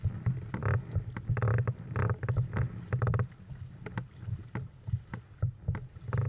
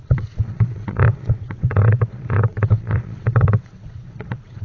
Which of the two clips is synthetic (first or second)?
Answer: second